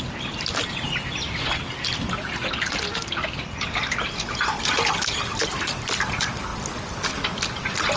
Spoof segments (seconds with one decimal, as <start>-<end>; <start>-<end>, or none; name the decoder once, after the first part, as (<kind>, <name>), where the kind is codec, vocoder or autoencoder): none